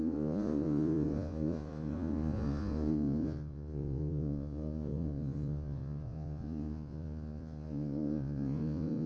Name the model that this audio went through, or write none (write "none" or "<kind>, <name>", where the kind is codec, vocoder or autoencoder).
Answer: vocoder, Vocos